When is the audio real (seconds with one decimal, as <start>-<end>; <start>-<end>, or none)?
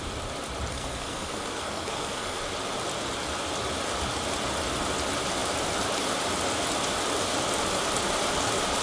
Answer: 0.0-0.7; 2.4-8.8